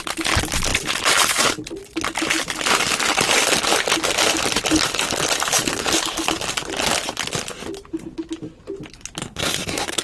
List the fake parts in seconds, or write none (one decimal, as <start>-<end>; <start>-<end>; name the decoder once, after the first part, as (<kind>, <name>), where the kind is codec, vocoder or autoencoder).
9.2-10.0 (codec, SNAC)